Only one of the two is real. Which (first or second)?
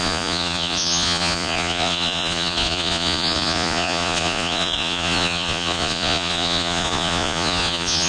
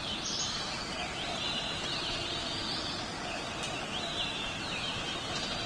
second